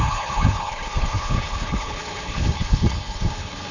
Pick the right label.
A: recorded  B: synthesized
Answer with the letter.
B